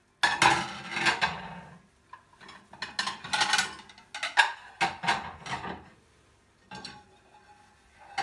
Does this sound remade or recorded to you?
recorded